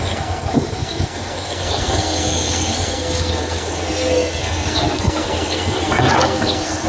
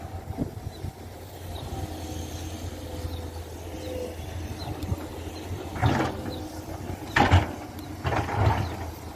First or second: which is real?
second